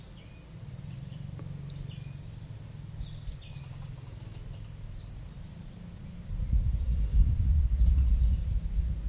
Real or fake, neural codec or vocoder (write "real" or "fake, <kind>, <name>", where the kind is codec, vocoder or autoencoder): real